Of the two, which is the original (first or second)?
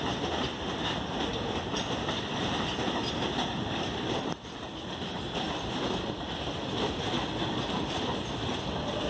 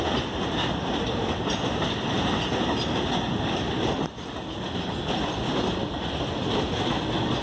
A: second